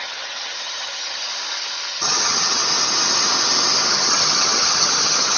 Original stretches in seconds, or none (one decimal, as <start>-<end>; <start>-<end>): 1.3-1.9; 2.6-3.9